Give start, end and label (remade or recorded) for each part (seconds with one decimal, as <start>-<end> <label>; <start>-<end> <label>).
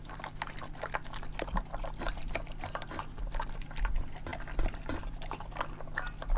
0.0-6.4 recorded